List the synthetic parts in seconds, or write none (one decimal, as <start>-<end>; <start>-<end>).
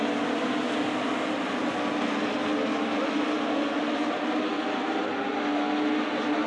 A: none